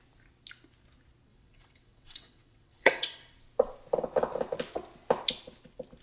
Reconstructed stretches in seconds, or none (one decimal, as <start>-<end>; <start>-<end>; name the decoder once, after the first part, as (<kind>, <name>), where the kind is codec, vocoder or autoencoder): 1.3-3.4 (vocoder, WaveNeXt)